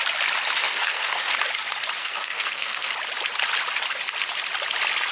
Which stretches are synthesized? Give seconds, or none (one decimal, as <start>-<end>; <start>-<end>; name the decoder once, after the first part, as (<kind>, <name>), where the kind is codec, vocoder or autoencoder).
0.6-1.3 (codec, SNAC); 2.0-2.9